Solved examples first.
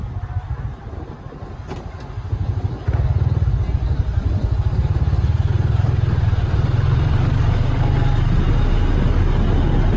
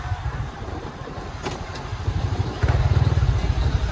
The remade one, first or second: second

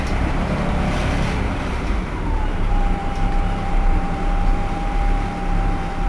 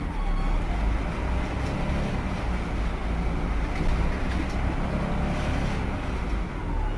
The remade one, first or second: first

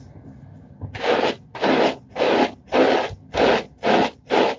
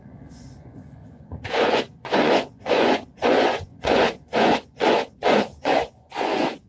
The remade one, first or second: second